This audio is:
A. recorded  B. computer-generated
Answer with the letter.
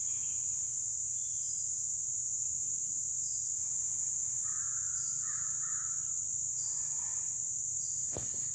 B